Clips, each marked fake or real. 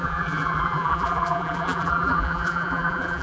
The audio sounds fake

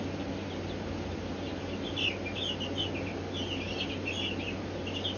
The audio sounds real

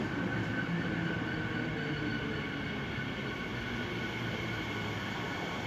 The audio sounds real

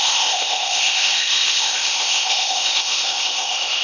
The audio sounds fake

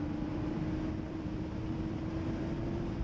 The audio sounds fake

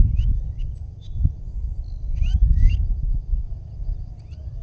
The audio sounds real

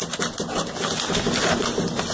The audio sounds real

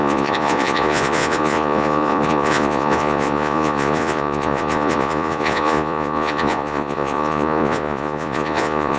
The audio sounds fake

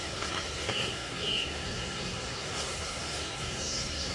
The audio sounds fake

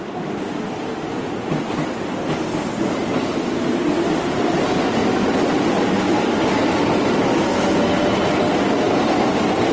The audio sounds real